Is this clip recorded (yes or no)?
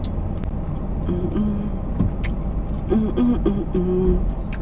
yes